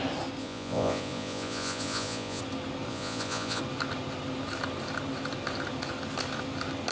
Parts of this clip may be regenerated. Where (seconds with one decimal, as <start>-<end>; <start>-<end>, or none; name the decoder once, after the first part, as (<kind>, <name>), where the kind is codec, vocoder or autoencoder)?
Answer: 0.4-2.4 (vocoder, Vocos); 2.9-3.6